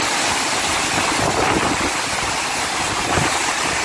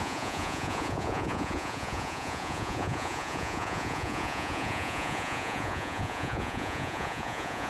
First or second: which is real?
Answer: first